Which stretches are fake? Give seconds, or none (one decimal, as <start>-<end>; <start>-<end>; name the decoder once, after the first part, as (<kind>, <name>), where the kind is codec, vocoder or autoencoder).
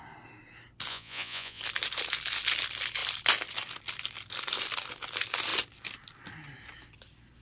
0.9-1.6 (vocoder, Vocos)